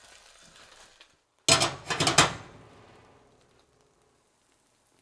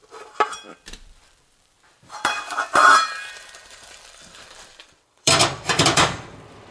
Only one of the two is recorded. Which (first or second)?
first